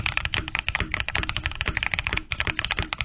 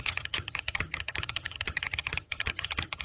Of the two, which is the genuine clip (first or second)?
first